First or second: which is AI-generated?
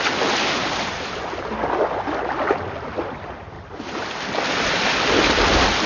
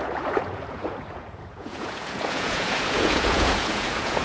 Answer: second